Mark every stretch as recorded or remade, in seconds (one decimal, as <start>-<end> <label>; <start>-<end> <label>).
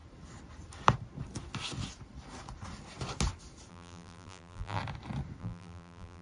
0.0-3.7 recorded; 3.7-4.8 remade; 4.8-5.4 recorded; 5.4-6.2 remade